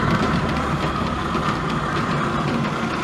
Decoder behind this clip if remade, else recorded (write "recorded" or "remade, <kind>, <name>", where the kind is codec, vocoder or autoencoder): remade, vocoder, BigVGAN v2